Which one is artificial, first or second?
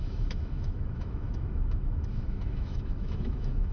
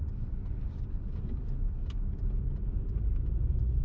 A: first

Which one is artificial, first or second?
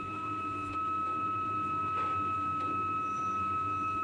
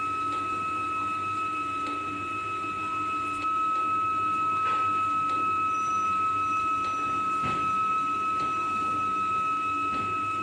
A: first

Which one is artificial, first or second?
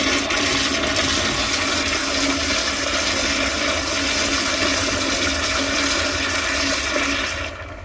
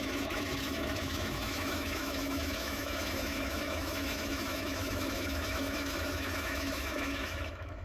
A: second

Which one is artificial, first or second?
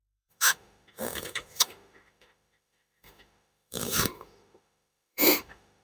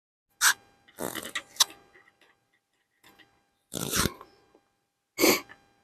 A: first